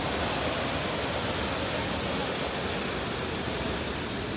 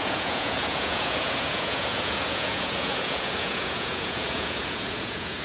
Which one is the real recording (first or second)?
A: first